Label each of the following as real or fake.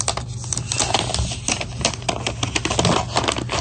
real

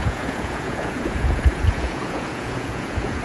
fake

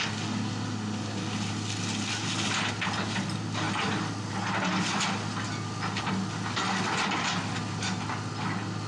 real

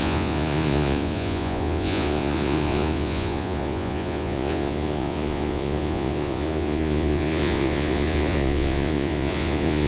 fake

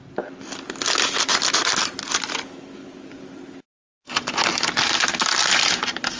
real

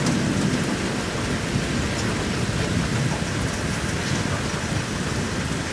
real